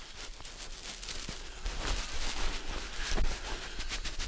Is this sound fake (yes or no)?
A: no